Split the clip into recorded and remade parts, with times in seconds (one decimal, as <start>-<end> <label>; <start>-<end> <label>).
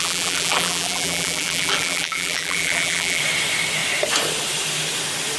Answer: 0.0-3.2 remade; 3.2-5.4 recorded